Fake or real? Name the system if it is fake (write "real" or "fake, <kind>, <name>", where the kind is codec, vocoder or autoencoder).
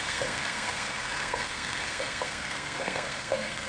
fake, codec, SNAC